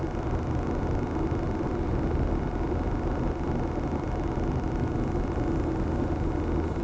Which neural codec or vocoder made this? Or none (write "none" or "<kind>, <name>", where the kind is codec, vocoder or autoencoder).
none